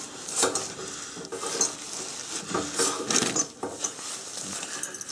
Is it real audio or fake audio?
real